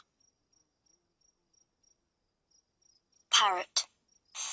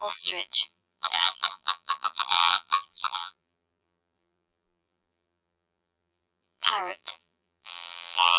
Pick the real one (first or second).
first